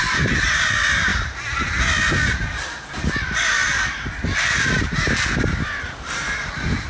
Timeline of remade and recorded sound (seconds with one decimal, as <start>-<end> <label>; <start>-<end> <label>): 0.0-6.9 recorded